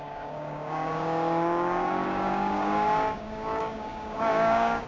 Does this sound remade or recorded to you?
remade